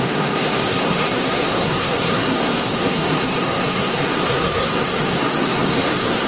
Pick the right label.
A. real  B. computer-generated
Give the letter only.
B